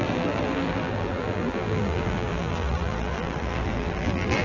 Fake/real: fake